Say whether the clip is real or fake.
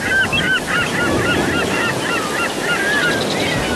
real